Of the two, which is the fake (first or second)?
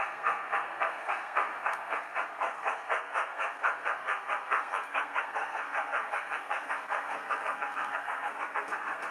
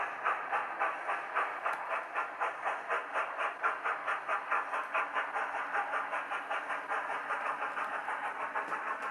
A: first